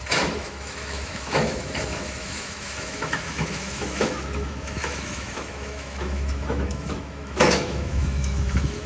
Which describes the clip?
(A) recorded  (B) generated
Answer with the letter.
B